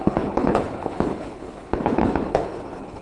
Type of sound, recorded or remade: remade